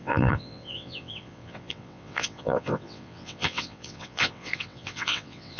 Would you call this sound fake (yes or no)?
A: yes